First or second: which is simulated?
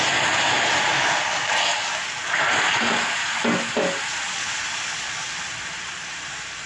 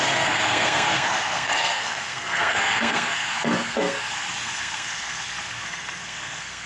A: second